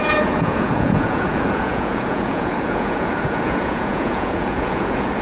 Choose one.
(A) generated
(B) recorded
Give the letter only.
A